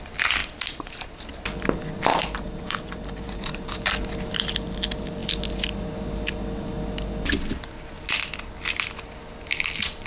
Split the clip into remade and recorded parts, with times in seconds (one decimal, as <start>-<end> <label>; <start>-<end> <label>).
0.0-0.4 recorded; 0.4-1.2 remade; 1.2-2.1 recorded; 2.1-3.9 remade; 3.9-10.1 recorded